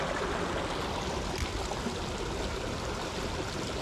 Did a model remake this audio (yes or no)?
no